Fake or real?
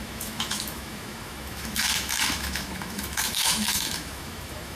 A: fake